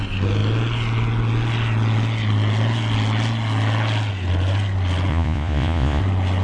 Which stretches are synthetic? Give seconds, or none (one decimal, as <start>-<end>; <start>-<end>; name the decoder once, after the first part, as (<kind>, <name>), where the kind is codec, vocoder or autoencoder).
5.1-6.0 (vocoder, Vocos)

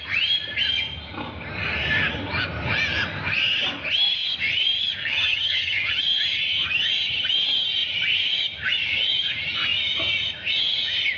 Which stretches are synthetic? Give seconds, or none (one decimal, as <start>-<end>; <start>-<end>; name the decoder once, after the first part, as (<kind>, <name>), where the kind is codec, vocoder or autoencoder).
5.0-6.0 (vocoder, HiFi-GAN)